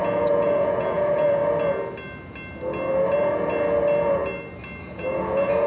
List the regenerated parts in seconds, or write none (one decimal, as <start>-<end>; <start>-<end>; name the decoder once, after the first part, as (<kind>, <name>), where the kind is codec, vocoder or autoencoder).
0.0-1.4 (vocoder, Vocos); 4.8-5.7